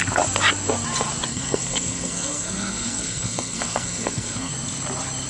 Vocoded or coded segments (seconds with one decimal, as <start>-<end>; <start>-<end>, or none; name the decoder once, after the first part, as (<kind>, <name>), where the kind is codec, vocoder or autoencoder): 1.3-4.5 (codec, SNAC)